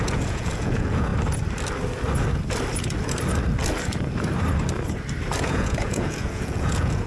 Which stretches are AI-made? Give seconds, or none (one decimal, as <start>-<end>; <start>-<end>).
0.0-1.1; 5.4-7.1